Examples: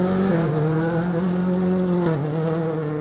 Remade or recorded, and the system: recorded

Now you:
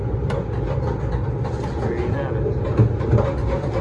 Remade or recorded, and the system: recorded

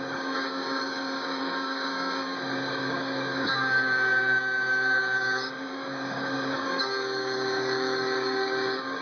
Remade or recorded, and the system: remade, codec, DAC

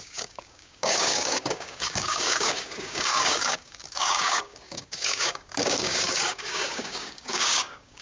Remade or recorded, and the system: remade, codec, DAC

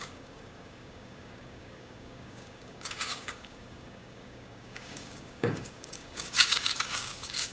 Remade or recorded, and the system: remade, codec, DAC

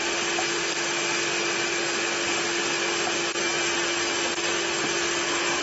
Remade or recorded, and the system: recorded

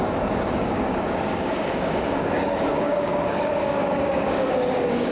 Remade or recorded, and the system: remade, codec, DAC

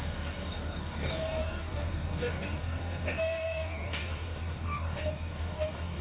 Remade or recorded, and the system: remade, codec, DAC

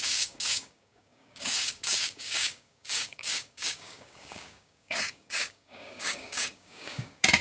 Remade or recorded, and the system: remade, codec, DAC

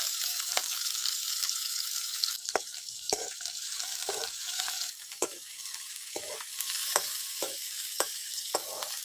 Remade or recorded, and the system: remade, codec, DAC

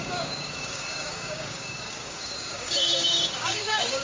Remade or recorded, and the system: remade, codec, DAC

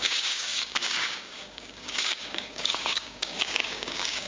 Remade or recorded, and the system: remade, codec, DAC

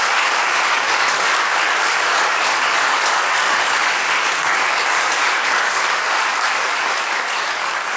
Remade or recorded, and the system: remade, codec, DAC